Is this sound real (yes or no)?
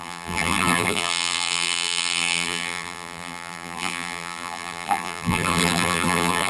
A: no